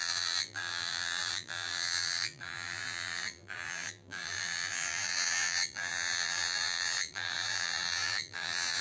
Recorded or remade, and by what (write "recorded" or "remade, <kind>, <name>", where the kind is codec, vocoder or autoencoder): remade, vocoder, BigVGAN v2